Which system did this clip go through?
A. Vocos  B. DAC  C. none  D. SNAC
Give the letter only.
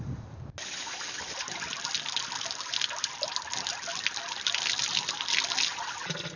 C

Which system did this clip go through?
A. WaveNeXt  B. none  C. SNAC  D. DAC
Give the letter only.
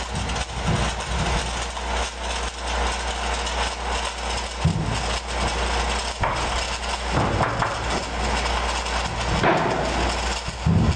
B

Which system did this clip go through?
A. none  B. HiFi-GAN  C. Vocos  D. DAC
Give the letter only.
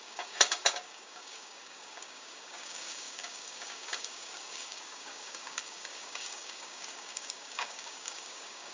D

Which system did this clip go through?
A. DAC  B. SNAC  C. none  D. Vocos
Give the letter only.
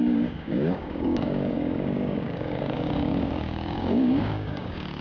A